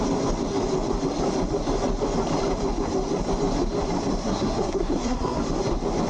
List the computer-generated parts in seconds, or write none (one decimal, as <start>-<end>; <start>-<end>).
4.2-5.4